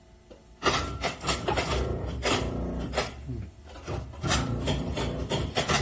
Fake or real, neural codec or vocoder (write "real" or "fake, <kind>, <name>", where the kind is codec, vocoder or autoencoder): real